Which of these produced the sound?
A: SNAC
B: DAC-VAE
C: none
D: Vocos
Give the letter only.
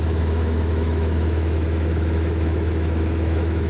B